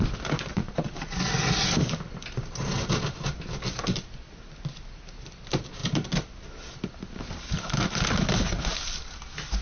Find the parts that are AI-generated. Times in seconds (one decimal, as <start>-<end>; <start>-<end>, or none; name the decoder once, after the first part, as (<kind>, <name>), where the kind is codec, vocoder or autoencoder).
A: 0.5-1.2 (vocoder, Vocos)